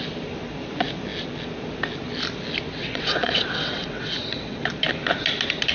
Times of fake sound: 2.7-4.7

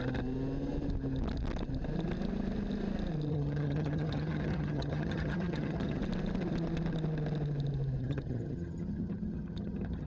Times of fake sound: 3.3-6.0; 8.0-10.1

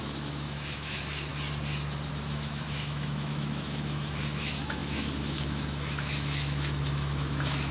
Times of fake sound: 0.0-1.3; 2.1-7.7

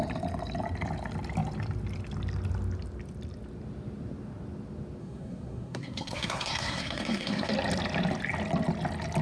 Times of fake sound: 5.0-7.5

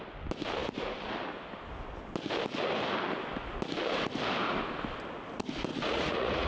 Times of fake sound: 5.7-6.5